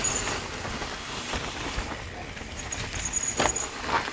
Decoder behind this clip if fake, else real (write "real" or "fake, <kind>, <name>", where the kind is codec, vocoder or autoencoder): real